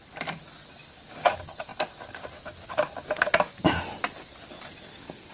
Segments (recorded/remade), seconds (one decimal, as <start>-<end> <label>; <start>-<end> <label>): 0.0-5.3 recorded